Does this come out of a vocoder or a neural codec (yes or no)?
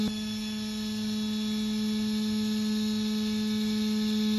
no